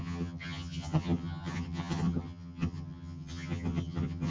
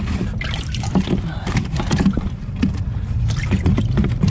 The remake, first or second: first